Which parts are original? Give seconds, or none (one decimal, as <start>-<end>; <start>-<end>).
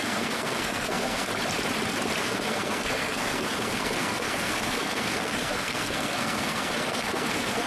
1.3-2.2